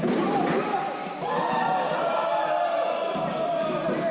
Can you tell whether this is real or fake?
real